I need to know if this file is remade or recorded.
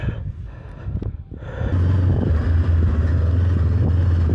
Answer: recorded